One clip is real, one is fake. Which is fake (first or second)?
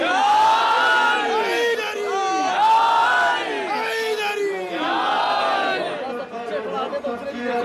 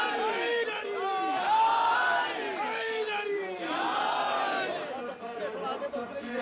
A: second